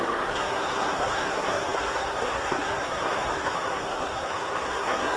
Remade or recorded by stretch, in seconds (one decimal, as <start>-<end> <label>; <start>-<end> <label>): 0.0-5.2 remade